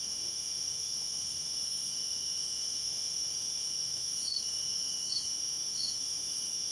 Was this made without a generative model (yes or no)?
no